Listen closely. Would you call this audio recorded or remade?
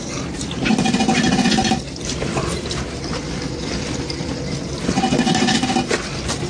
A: recorded